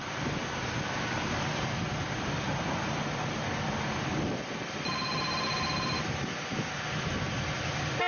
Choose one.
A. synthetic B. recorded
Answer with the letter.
B